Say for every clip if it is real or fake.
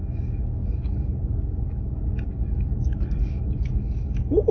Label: fake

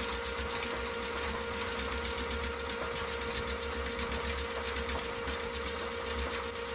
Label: real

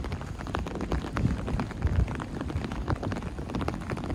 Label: real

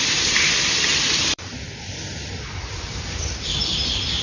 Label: fake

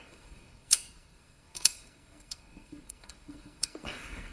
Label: fake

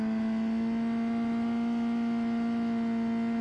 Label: real